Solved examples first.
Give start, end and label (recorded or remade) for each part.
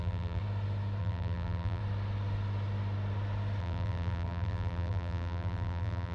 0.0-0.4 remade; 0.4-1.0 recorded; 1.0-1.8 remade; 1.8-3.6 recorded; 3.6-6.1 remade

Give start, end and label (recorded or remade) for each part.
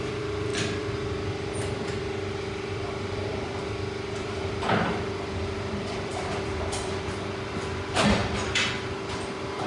0.0-9.7 remade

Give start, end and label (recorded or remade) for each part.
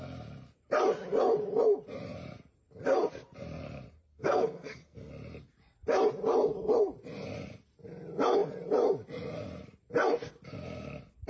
0.0-4.1 recorded; 4.1-5.1 remade; 5.1-11.3 recorded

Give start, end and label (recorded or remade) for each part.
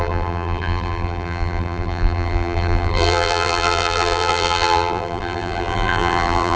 0.0-6.6 remade